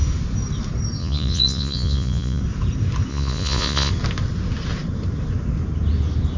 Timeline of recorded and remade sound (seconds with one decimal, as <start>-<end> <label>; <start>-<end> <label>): 0.0-1.0 recorded; 1.0-2.4 remade; 2.4-3.1 recorded; 3.1-3.9 remade; 3.9-6.4 recorded